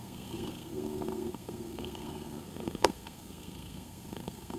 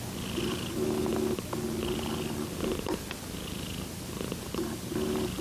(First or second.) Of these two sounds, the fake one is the first